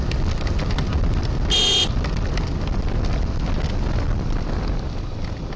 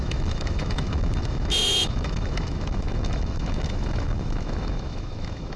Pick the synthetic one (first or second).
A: second